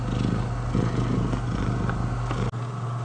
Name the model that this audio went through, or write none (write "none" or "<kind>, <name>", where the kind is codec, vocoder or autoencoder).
none